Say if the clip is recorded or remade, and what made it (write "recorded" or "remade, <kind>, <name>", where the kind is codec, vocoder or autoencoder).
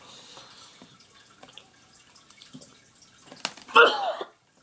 recorded